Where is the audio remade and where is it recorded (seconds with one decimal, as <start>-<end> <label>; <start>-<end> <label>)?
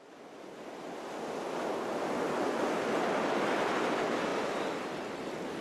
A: 0.0-4.3 recorded; 4.3-4.8 remade; 4.8-5.6 recorded